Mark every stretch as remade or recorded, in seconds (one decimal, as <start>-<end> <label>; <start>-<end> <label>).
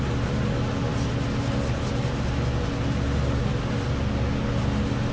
0.0-5.1 recorded